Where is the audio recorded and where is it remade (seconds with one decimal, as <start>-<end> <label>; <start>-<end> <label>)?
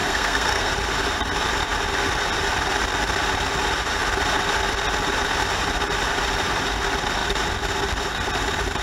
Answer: 0.0-0.7 remade; 0.7-8.8 recorded